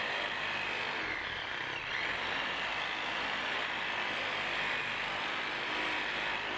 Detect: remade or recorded recorded